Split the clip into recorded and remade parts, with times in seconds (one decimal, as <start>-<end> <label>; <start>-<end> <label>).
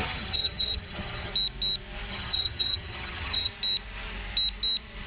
0.0-1.3 remade; 1.3-2.1 recorded; 2.1-3.5 remade; 3.5-5.1 recorded